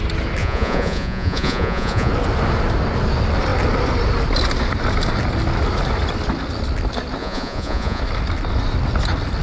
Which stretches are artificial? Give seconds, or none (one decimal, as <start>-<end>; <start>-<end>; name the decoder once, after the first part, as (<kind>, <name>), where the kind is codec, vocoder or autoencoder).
0.4-2.1 (vocoder, Vocos); 7.2-8.0